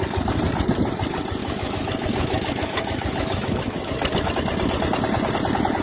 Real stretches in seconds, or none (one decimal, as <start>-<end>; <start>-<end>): 0.0-1.4; 4.3-5.8